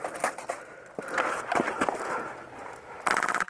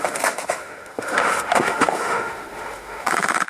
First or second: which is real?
first